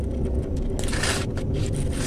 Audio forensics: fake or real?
real